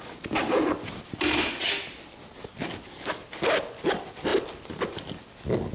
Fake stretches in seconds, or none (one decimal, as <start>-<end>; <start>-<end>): none